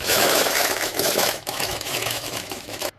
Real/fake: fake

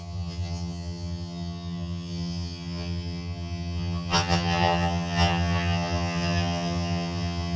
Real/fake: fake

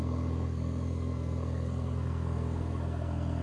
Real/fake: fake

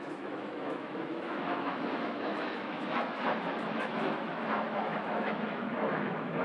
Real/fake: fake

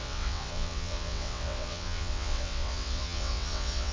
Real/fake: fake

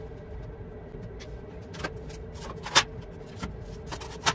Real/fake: real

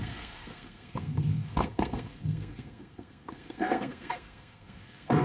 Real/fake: fake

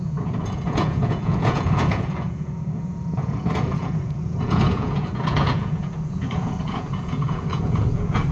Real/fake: fake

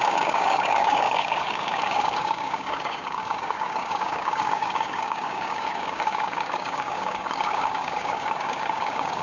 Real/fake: fake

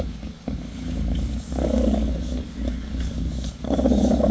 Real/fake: fake